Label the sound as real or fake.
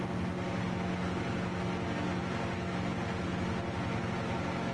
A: real